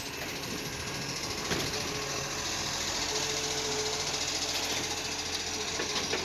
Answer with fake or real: real